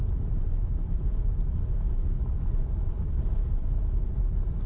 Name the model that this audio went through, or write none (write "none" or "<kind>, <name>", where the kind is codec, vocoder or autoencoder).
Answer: vocoder, BigVGAN v2